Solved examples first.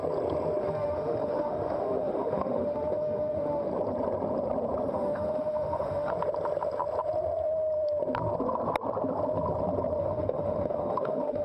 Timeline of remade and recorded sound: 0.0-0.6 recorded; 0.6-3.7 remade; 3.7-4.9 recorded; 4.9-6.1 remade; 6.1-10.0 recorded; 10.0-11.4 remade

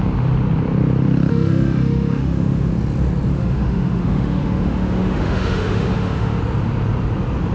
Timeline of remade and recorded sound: 0.0-1.3 recorded; 1.3-2.7 remade; 2.7-3.3 recorded; 3.3-6.4 remade; 6.4-7.5 recorded